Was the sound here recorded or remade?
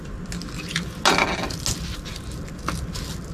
recorded